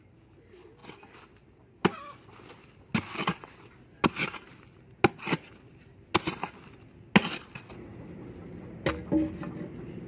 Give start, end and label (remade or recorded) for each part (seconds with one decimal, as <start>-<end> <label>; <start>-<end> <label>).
0.0-10.1 recorded